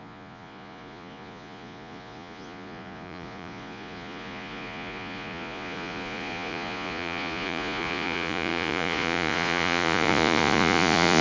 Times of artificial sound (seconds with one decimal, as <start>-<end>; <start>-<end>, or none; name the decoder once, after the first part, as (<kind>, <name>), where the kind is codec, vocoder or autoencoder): 0.0-11.2 (vocoder, Vocos)